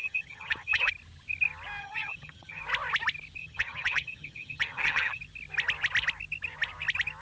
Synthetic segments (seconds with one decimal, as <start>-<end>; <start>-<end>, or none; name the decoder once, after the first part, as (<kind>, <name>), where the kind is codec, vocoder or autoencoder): 0.0-0.9 (vocoder, HiFi-GAN); 1.8-2.6; 3.4-5.2